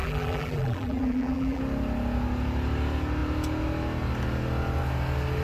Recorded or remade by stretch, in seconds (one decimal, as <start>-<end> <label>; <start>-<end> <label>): 0.0-1.6 remade; 1.6-5.4 recorded